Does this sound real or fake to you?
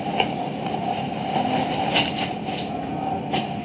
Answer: real